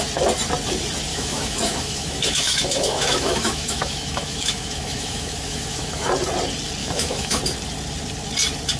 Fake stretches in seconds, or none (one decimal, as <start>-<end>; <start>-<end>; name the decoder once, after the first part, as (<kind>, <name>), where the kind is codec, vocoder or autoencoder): 1.1-6.1 (autoencoder, DAC-VAE); 6.8-7.4